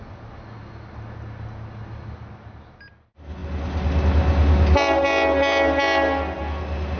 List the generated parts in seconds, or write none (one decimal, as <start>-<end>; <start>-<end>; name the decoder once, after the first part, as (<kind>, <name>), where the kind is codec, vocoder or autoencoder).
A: none